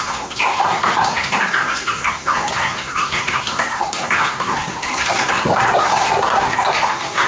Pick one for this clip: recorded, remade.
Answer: remade